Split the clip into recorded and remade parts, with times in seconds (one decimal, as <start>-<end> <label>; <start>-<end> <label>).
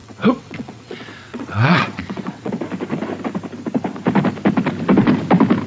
0.0-2.5 remade; 2.5-5.7 recorded